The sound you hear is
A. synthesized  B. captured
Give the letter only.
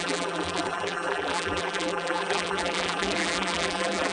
A